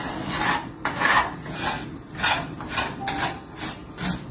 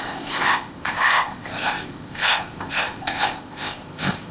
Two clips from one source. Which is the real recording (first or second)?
first